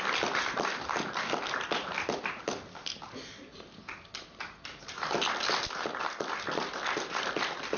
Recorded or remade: recorded